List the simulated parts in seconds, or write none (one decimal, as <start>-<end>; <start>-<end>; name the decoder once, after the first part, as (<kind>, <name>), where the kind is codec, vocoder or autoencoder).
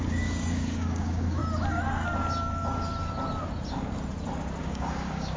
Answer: 0.0-1.4 (codec, DAC); 4.6-5.4